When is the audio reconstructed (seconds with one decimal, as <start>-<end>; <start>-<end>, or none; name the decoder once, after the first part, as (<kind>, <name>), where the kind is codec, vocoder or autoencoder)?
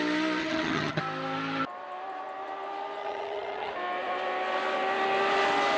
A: 0.4-1.0 (vocoder, HiFi-GAN); 3.0-3.7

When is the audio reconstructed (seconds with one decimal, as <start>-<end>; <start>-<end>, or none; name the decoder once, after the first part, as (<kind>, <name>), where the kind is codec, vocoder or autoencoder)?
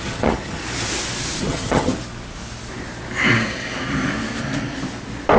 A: 0.0-0.6 (vocoder, HiFi-GAN); 1.4-1.9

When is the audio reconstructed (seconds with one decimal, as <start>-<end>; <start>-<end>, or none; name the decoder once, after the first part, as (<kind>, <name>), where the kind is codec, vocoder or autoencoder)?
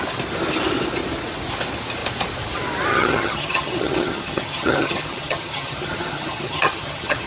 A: 2.9-7.3 (vocoder, HiFi-GAN)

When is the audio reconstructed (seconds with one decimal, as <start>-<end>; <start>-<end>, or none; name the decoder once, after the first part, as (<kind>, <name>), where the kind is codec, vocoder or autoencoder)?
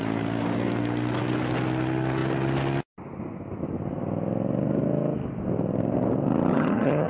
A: 6.5-7.1 (vocoder, HiFi-GAN)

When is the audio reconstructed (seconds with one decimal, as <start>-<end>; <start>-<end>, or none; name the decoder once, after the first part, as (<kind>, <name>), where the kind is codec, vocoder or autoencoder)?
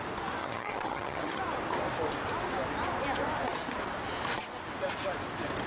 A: 0.4-1.4 (vocoder, HiFi-GAN)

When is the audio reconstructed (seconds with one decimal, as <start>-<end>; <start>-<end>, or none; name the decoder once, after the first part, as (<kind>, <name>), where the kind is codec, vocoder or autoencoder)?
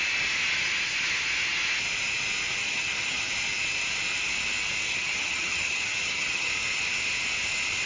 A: 2.6-3.2 (vocoder, HiFi-GAN); 4.9-6.5